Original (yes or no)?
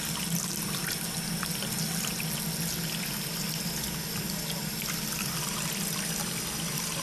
yes